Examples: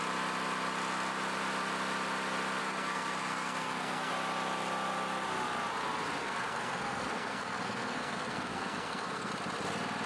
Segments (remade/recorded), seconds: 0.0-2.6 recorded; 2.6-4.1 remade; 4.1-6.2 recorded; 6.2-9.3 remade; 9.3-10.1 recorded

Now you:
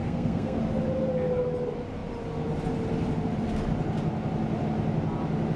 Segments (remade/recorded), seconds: 0.0-0.6 remade; 0.6-5.6 recorded

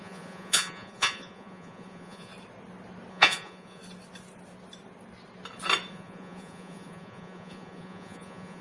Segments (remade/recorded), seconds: 0.0-2.3 remade; 2.3-3.1 recorded; 3.1-3.8 remade; 3.8-5.9 recorded; 5.9-8.6 remade

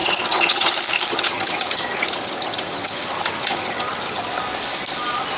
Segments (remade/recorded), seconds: 0.0-0.7 remade; 0.7-1.1 recorded; 1.1-4.3 remade; 4.3-5.4 recorded

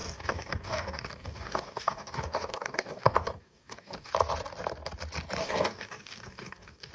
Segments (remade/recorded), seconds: 0.0-4.1 remade; 4.1-5.4 recorded; 5.4-6.9 remade

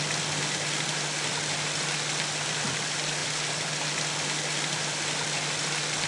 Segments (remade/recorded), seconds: 0.0-6.1 recorded

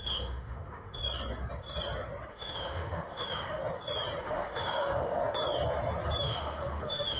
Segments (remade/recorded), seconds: 0.0-1.0 remade; 1.0-2.3 recorded; 2.3-3.6 remade; 3.6-4.2 recorded; 4.2-5.2 remade; 5.2-6.2 recorded; 6.2-7.2 remade

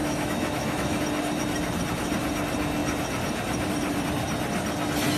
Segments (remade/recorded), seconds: 0.0-1.0 remade; 1.0-5.2 recorded